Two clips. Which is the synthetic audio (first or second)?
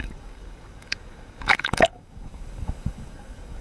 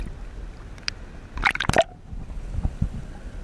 first